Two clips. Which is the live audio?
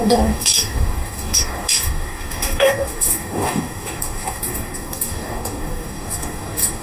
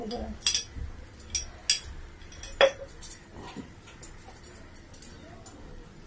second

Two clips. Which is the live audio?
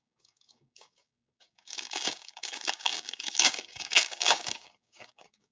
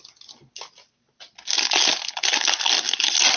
second